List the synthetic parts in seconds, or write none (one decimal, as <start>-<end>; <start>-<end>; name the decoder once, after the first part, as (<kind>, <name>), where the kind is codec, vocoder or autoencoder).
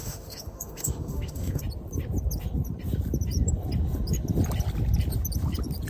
0.0-1.6 (autoencoder, DAC-VAE)